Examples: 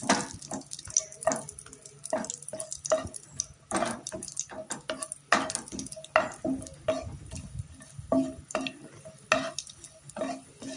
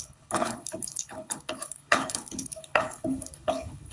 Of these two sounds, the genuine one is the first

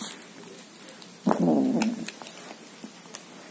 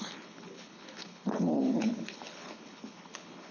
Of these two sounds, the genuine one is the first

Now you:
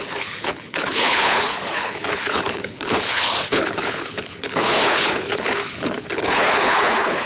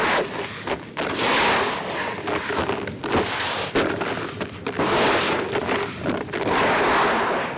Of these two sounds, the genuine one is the second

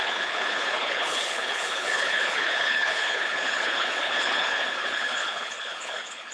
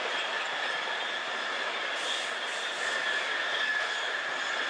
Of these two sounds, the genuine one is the second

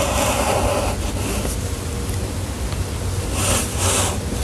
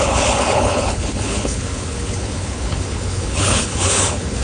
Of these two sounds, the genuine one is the first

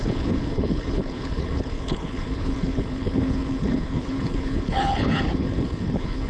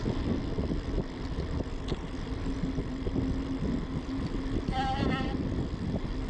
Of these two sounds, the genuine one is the second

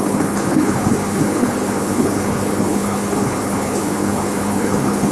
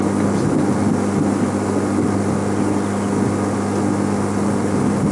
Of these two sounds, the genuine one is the second